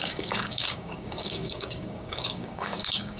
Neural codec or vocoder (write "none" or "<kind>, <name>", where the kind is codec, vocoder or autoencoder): codec, DAC